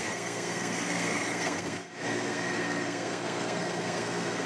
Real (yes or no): no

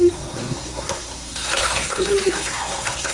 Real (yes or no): no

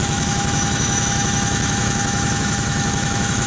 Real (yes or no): no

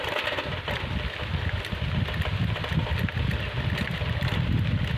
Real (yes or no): yes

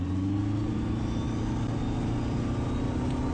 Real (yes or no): yes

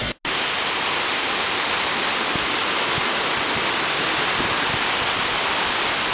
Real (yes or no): yes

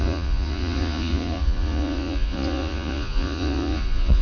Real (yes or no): no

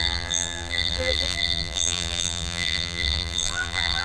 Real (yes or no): no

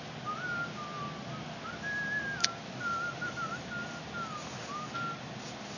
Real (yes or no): yes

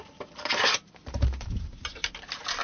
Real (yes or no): yes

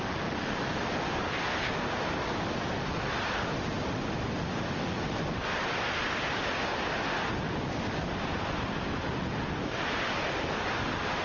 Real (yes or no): yes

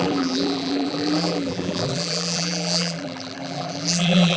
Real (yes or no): no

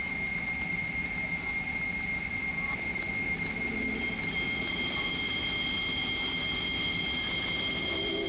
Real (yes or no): yes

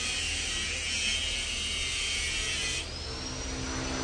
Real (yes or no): yes